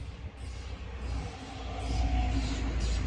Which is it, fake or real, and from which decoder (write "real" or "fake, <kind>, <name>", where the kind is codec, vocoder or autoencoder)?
real